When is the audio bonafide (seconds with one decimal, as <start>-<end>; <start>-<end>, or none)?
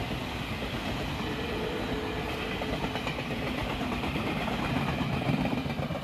0.0-3.6; 4.6-6.0